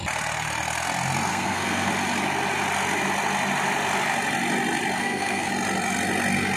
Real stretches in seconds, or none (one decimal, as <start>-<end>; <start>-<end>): 0.0-1.3; 1.9-5.0; 5.5-6.6